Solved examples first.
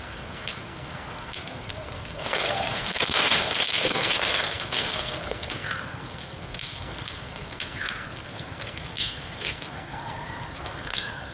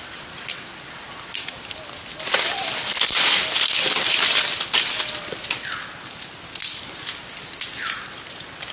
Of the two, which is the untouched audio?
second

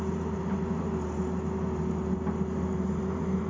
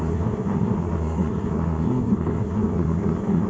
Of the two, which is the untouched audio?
first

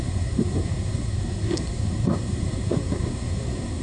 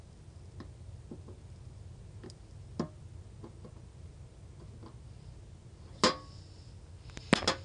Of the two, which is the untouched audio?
second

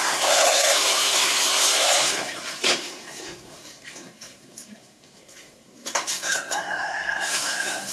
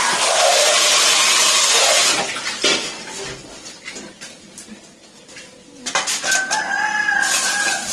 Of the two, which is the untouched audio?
second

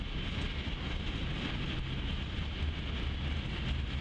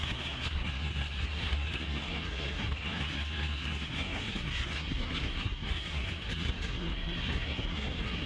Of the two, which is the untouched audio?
first